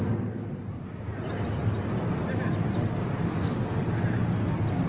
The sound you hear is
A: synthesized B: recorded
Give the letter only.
B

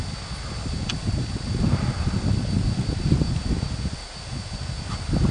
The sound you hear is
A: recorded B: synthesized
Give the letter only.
A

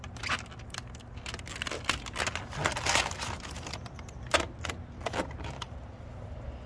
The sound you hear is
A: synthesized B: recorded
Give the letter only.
B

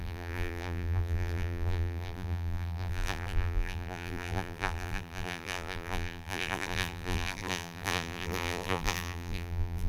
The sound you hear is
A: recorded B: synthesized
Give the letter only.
B